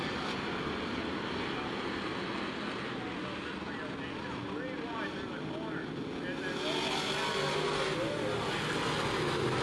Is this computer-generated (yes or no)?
no